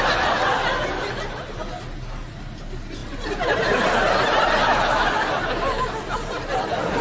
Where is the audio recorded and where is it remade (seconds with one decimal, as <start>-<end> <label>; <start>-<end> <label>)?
0.0-7.0 recorded